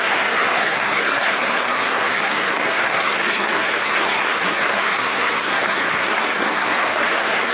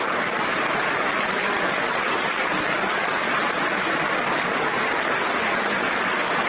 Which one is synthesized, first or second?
first